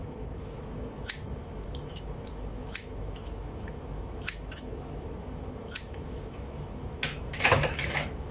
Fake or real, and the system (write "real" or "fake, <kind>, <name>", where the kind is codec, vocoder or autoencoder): fake, autoencoder, DAC-VAE